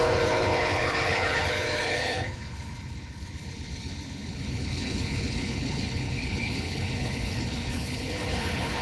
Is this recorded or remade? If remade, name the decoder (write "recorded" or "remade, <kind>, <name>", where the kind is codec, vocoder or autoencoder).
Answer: remade, codec, HILCodec